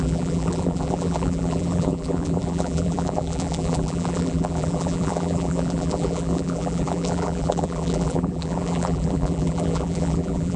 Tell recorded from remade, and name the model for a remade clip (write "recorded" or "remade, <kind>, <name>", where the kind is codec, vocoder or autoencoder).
remade, vocoder, BigVGAN v2